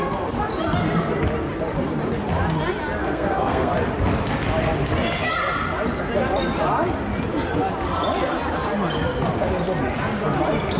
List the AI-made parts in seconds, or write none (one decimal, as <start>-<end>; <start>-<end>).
3.0-3.7